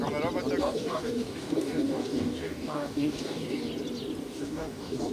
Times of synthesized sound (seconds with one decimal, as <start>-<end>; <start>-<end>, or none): 0.6-3.7; 4.2-5.1